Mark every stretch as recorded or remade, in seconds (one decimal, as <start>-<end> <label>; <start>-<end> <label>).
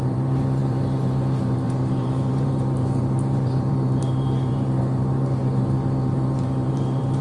0.0-7.2 remade